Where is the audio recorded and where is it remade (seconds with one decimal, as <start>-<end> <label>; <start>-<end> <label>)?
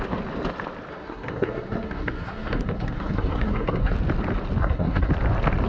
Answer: 0.0-0.9 recorded; 0.9-3.9 remade; 3.9-4.6 recorded; 4.6-5.1 remade; 5.1-5.7 recorded